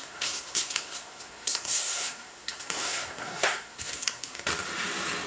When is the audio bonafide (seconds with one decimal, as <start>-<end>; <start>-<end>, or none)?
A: 4.5-5.3